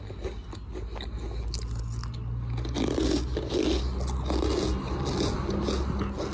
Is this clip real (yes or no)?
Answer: yes